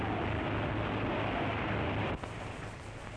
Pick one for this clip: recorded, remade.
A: recorded